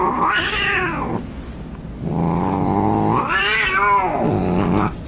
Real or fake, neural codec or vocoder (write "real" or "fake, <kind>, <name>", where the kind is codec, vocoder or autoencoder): real